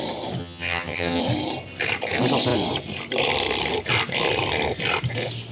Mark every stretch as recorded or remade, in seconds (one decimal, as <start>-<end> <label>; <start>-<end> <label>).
0.0-0.4 recorded; 0.4-1.2 remade; 1.2-5.5 recorded